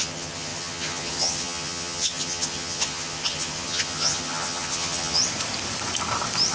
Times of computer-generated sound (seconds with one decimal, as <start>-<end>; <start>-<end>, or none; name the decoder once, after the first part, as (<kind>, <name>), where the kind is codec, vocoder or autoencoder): 0.0-5.2 (vocoder, HiFi-GAN)